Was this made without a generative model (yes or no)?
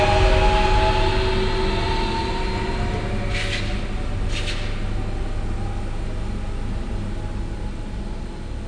yes